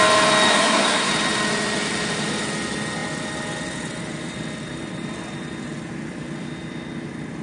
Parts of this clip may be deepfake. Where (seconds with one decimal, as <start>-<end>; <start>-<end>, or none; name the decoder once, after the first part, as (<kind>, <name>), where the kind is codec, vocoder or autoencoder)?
0.5-1.1 (codec, SNAC)